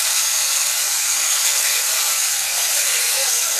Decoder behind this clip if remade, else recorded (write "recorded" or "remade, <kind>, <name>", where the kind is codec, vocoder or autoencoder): remade, codec, SNAC